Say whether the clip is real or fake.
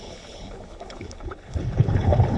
fake